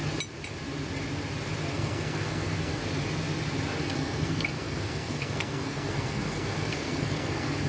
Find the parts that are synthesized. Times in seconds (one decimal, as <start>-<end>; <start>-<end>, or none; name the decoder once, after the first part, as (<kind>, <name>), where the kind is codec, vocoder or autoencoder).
1.7-2.8 (codec, SNAC); 3.8-7.7